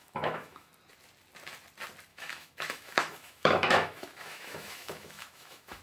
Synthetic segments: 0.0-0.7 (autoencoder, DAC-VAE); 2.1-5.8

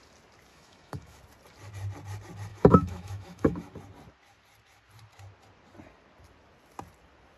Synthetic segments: 0.5-1.2 (autoencoder, DAC-VAE); 2.5-3.7